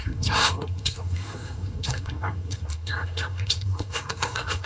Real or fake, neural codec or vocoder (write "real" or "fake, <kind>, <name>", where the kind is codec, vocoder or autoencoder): fake, codec, SNAC